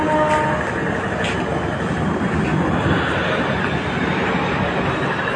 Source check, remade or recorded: recorded